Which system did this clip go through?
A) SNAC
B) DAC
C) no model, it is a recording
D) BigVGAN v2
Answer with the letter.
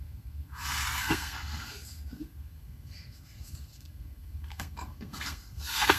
A